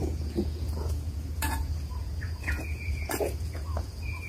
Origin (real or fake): fake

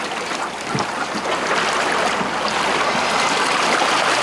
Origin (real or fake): real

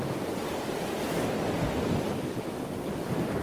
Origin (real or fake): real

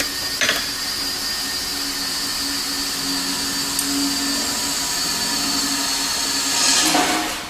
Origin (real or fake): real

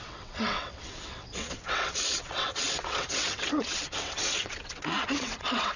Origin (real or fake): fake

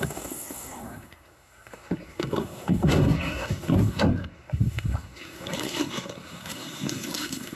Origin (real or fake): fake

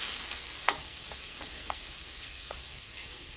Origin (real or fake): fake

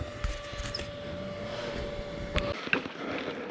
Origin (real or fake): real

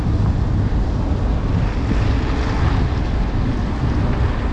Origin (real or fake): real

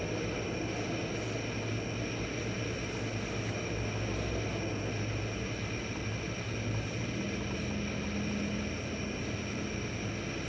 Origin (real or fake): real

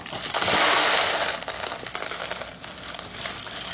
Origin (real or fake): real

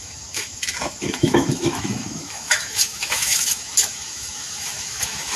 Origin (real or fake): fake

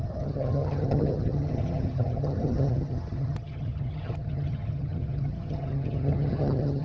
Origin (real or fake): fake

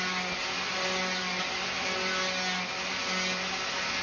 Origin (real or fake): real